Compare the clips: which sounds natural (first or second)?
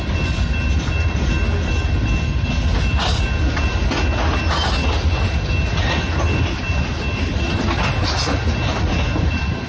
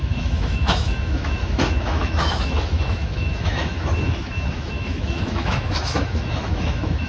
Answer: first